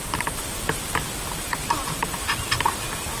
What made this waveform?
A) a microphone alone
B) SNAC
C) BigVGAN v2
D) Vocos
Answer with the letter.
A